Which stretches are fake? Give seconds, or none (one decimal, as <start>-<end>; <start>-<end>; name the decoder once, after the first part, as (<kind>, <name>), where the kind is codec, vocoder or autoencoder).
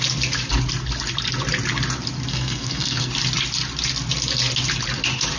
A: 2.3-3.1 (codec, SNAC)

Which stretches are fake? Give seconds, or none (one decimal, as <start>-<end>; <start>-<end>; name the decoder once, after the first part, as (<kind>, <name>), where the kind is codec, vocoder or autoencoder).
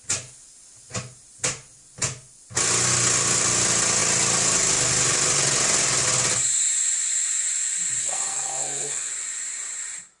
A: 8.0-9.1 (codec, SNAC)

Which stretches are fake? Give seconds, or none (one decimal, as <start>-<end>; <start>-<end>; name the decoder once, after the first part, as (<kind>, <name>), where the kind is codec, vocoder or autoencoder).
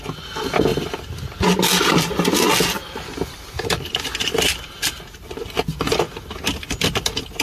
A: none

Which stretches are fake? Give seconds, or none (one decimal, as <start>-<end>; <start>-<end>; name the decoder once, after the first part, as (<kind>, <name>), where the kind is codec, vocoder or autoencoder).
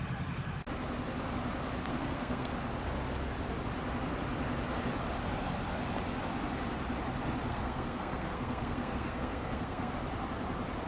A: 1.8-2.5 (codec, SNAC); 7.5-9.9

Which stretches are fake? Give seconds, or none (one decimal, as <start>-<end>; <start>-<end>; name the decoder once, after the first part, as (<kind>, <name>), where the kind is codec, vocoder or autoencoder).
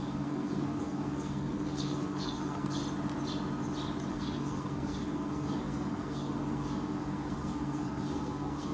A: 0.0-2.8 (codec, SNAC); 4.1-8.7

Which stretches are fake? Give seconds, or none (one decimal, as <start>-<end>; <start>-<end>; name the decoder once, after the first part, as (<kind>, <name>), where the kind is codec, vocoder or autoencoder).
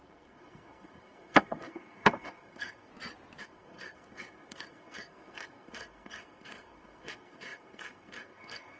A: 0.0-2.9 (codec, SNAC); 3.4-8.8